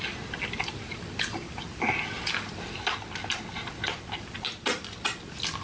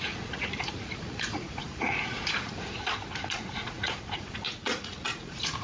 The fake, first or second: second